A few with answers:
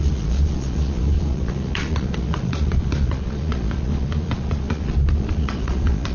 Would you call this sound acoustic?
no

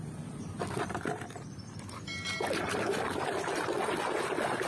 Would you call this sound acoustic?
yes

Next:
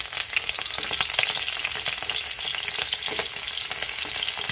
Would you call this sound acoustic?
yes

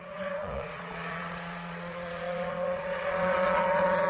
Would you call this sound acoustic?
no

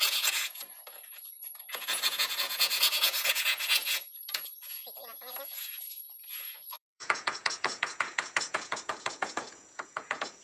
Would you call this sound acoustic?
no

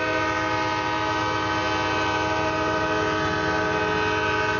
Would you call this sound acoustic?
yes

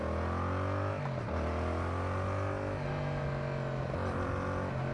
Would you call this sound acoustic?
yes